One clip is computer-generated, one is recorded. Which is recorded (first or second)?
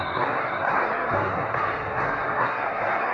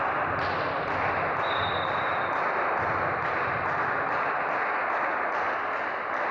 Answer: second